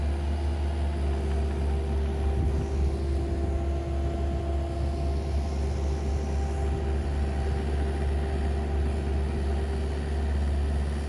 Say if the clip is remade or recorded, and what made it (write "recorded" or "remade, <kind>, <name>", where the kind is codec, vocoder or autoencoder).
recorded